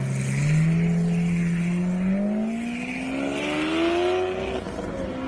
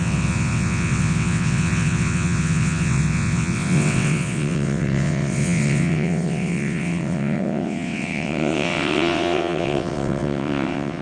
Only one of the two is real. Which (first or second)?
first